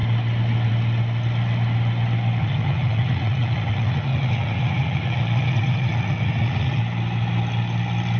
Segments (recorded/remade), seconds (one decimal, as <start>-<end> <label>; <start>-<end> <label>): 0.0-2.4 recorded; 2.4-6.8 remade; 6.8-8.2 recorded